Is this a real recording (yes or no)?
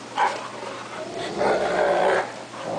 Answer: yes